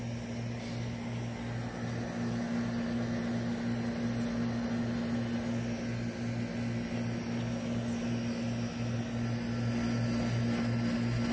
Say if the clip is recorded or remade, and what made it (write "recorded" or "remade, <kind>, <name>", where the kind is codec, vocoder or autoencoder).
recorded